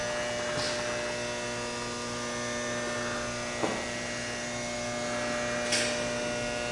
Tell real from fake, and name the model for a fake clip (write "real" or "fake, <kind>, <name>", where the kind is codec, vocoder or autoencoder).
real